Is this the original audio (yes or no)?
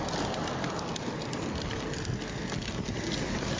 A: yes